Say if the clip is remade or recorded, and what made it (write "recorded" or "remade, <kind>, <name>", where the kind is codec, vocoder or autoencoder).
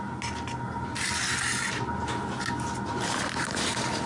recorded